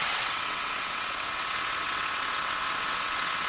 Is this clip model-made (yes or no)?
yes